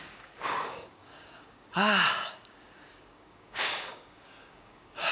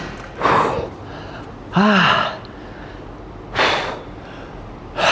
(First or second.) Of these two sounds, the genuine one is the second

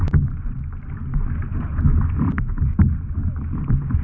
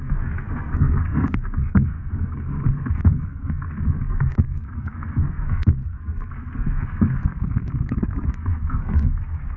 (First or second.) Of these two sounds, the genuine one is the first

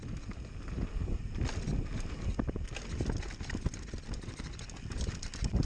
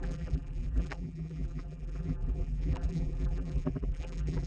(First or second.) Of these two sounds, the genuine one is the first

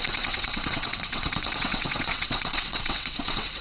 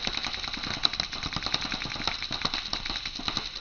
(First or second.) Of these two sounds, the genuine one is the second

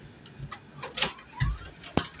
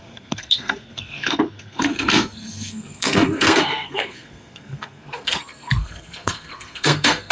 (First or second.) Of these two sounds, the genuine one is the first